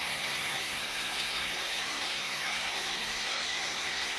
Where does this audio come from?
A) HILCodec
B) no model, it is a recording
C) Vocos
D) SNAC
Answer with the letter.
D